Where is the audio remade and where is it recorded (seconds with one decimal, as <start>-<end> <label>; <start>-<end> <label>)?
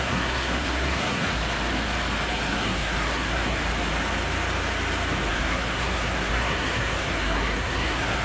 0.0-1.4 remade; 1.4-2.3 recorded; 2.3-3.6 remade; 3.6-5.3 recorded; 5.3-8.2 remade